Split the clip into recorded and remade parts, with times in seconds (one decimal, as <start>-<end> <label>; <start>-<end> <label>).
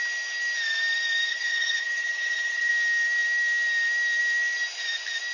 0.0-1.3 recorded; 1.3-2.7 remade; 2.7-5.3 recorded